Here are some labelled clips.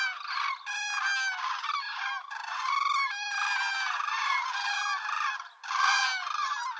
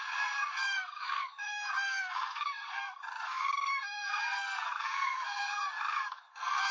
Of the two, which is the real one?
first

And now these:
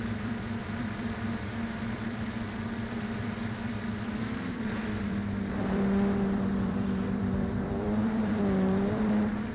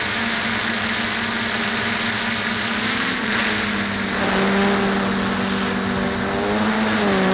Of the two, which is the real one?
second